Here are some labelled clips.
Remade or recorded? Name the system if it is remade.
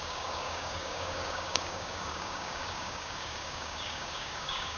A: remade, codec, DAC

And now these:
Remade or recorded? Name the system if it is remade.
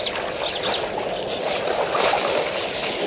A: recorded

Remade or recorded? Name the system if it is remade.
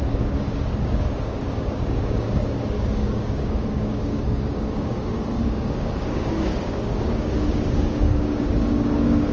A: remade, codec, DAC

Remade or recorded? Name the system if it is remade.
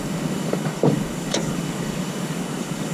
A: remade, codec, DAC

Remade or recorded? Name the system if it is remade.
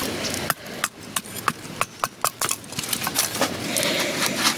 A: recorded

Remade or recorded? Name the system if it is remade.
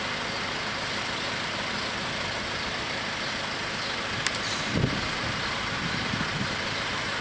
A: recorded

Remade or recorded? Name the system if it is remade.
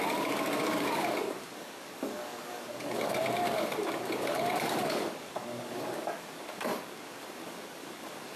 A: remade, codec, DAC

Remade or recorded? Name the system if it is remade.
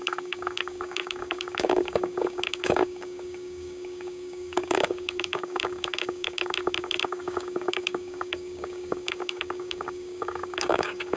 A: remade, codec, DAC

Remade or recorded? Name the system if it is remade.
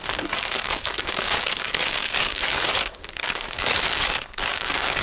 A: remade, codec, DAC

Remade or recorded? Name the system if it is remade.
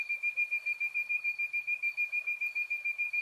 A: recorded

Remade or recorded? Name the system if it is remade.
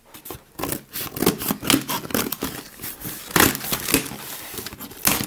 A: recorded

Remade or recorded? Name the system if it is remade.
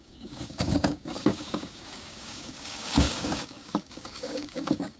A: remade, codec, DAC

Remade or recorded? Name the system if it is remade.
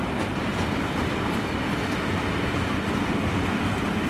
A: recorded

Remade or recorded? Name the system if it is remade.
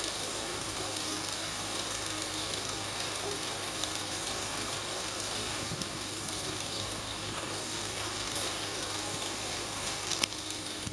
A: remade, codec, DAC